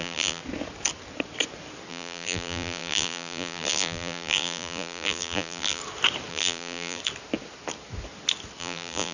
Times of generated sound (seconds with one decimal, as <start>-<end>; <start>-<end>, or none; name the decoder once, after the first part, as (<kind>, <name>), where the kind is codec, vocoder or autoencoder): 0.0-0.4 (vocoder, BigVGAN v2); 1.9-5.8; 6.3-7.0; 8.6-9.1

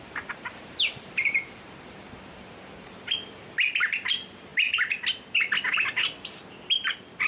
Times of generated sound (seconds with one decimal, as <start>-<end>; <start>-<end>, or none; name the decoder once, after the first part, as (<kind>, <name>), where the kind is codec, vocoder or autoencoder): 0.0-4.5 (vocoder, BigVGAN v2); 6.8-7.3

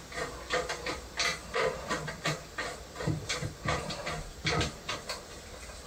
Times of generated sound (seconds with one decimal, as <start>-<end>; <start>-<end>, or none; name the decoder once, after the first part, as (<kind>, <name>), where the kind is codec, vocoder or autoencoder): none

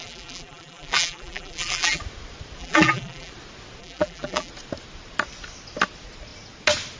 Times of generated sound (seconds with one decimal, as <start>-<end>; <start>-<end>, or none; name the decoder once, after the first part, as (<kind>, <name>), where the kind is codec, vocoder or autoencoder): 0.0-2.0 (vocoder, BigVGAN v2); 2.6-3.3; 3.8-4.5

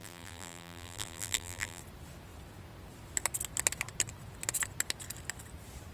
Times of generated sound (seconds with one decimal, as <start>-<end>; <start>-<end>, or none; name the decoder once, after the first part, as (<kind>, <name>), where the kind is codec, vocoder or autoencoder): 0.0-1.8 (vocoder, BigVGAN v2)

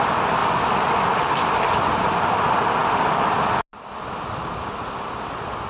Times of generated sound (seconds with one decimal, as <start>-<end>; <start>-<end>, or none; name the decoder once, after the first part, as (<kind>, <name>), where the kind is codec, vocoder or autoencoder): 0.4-1.9 (vocoder, BigVGAN v2)